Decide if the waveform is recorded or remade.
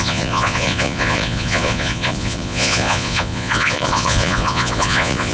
remade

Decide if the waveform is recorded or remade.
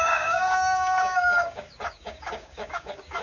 remade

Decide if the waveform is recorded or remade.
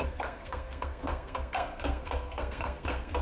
remade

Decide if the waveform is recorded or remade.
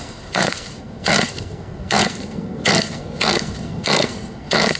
remade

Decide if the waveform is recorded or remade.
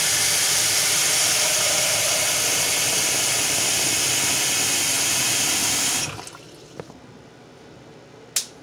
recorded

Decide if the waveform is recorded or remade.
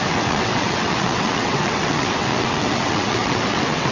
remade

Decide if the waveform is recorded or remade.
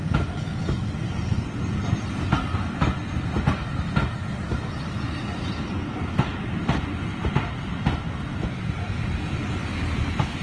recorded